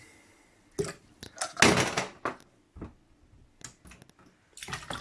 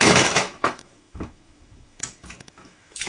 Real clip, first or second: first